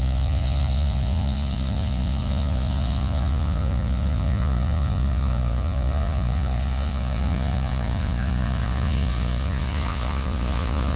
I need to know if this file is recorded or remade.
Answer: remade